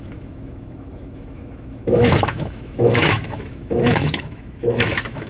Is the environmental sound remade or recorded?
remade